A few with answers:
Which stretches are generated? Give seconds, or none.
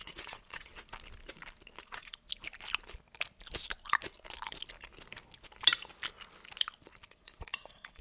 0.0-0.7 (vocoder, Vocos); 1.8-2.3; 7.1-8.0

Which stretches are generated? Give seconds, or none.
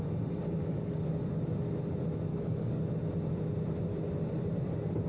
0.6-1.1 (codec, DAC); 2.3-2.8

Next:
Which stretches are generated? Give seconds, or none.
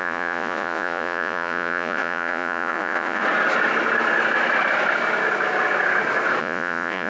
0.0-3.2 (vocoder, Vocos); 6.4-7.1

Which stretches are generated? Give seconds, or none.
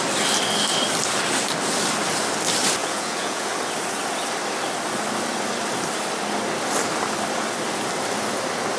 2.8-3.5 (vocoder, Vocos)